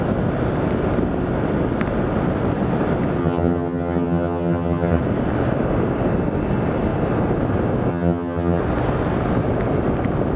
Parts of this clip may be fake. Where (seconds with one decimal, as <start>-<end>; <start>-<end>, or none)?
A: 3.2-5.0; 7.9-8.6